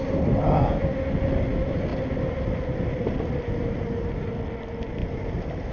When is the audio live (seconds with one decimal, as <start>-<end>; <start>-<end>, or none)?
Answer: 0.0-5.7